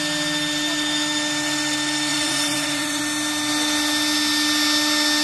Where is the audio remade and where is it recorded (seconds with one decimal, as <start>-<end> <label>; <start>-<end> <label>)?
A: 0.0-2.1 recorded; 2.1-3.0 remade; 3.0-5.2 recorded